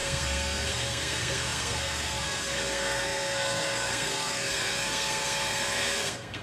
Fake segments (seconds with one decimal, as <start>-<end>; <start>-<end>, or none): 0.0-6.4